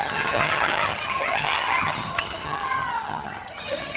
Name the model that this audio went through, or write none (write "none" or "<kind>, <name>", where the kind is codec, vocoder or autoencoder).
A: vocoder, HiFi-GAN